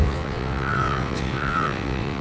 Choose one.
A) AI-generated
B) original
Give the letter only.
A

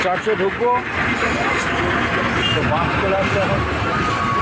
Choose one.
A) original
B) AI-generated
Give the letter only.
A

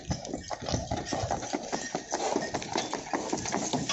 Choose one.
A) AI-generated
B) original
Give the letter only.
B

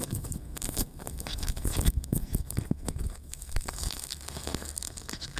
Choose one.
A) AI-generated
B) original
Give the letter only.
A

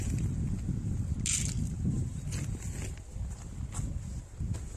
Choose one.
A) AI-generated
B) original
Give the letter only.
B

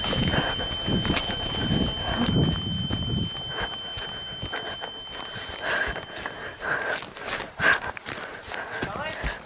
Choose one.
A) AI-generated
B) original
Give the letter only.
B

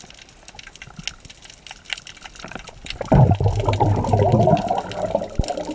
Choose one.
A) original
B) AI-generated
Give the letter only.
A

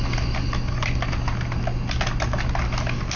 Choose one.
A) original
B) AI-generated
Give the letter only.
A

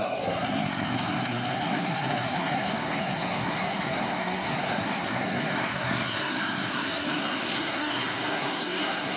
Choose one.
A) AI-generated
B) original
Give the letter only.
A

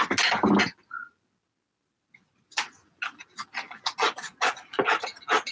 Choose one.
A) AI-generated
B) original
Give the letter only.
B